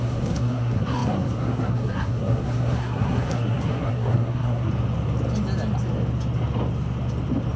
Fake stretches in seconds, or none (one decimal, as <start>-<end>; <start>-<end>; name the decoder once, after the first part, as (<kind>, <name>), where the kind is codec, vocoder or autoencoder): 0.0-4.7 (codec, SNAC)